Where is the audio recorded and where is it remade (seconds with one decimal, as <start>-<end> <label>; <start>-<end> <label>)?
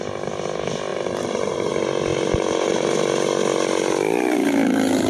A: 0.0-0.9 recorded; 0.9-1.7 remade; 1.7-2.1 recorded; 2.1-3.0 remade; 3.0-5.1 recorded